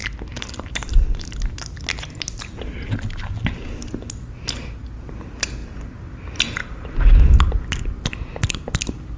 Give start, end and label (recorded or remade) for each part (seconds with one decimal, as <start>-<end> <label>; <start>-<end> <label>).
0.0-9.2 recorded